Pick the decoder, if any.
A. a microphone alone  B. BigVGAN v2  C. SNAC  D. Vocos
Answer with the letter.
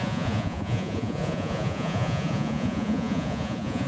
D